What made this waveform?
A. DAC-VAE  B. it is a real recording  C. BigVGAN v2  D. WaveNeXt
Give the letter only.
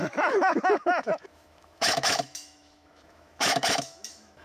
A